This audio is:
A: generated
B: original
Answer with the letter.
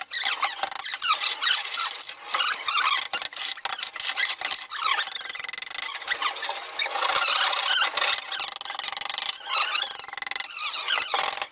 B